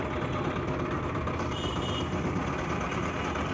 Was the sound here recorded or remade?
recorded